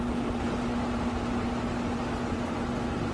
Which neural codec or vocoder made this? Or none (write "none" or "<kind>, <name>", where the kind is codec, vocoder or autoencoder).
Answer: none